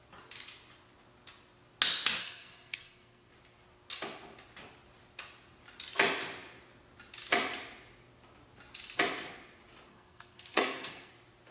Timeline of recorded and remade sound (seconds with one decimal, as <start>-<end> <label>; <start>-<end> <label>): 0.0-2.2 recorded; 2.2-3.3 remade; 3.3-9.9 recorded; 9.9-11.1 remade; 11.1-11.5 recorded